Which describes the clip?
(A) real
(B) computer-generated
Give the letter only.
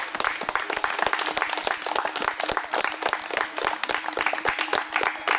A